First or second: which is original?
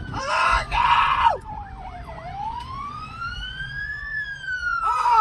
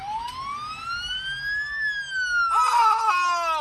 second